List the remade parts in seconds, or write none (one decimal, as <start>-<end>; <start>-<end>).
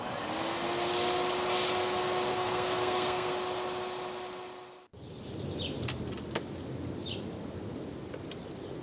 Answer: 2.3-3.3